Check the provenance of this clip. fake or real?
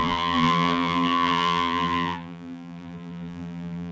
fake